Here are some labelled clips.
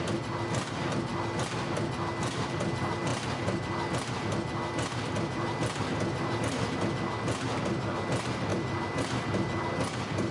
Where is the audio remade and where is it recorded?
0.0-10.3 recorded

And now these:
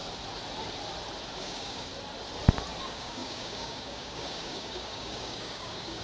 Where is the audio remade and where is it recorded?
0.0-1.4 recorded; 1.4-1.9 remade; 1.9-2.8 recorded; 2.8-6.0 remade